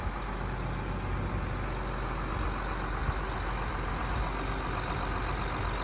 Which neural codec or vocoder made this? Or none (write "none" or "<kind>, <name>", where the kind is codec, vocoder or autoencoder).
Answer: none